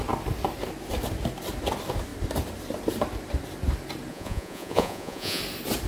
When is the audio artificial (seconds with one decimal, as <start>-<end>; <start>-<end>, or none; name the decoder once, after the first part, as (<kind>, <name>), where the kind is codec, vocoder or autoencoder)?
4.1-5.4 (vocoder, Vocos)